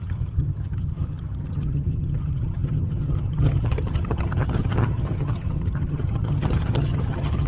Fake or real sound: fake